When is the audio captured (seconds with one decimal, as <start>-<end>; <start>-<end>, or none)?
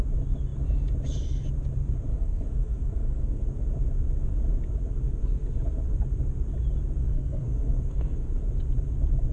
0.0-2.1; 3.4-7.0; 8.3-9.3